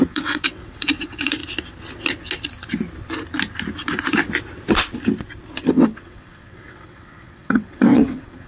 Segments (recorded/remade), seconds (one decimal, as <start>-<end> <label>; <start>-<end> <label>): 0.0-1.4 remade; 1.4-5.7 recorded; 5.7-8.5 remade